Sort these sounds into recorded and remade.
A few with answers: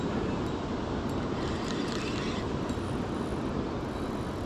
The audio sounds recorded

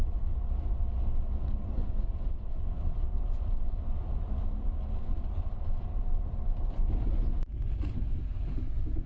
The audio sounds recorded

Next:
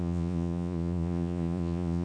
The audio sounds remade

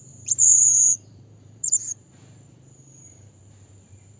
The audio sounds remade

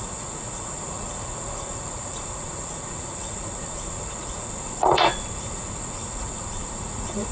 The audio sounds remade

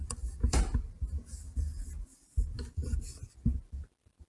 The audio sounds recorded